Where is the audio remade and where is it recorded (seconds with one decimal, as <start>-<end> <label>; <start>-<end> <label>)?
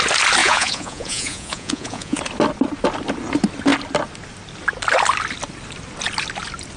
0.0-0.4 recorded; 0.4-2.2 remade; 2.2-6.8 recorded